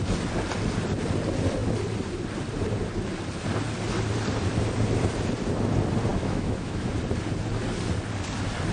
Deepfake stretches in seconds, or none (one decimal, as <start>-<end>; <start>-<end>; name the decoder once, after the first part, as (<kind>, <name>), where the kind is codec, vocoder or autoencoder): 6.1-6.9 (autoencoder, DAC-VAE)